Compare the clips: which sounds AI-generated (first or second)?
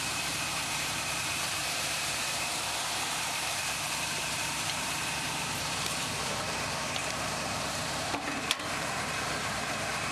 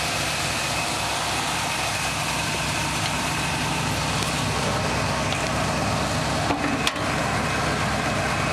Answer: first